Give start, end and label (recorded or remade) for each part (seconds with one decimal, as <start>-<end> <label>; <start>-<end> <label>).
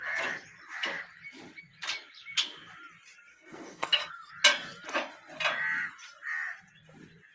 0.0-3.3 recorded; 3.3-4.3 remade; 4.3-7.3 recorded